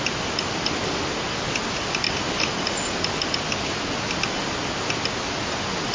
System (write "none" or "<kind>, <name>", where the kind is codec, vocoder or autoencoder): none